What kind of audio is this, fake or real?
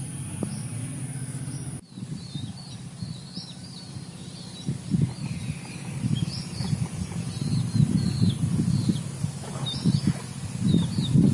real